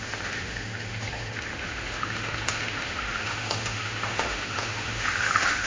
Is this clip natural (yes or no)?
no